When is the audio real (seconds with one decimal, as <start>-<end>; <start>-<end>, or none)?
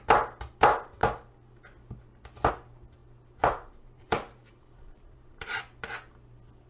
0.0-3.0; 5.6-6.7